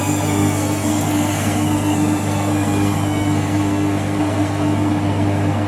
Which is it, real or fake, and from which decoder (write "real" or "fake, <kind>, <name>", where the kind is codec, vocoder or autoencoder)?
fake, codec, SNAC